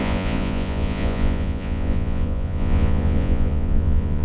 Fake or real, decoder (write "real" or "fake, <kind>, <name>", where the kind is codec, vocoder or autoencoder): fake, vocoder, Vocos